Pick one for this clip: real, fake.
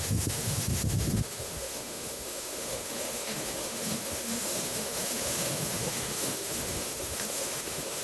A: fake